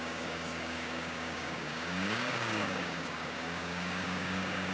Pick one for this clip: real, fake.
fake